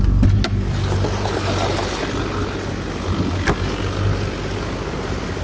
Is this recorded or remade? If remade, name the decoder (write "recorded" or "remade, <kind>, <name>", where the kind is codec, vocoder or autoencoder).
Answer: recorded